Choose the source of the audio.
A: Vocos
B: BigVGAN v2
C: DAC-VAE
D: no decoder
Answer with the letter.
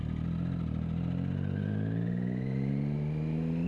D